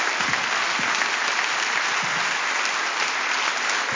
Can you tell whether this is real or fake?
real